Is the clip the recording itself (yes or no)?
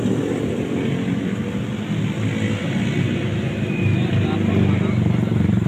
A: yes